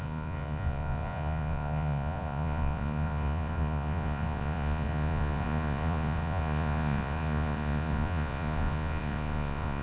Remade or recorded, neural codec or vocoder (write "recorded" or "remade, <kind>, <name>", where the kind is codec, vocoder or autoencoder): remade, vocoder, Vocos